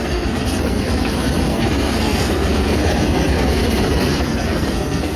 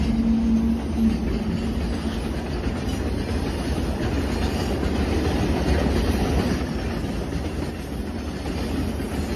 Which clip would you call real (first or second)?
second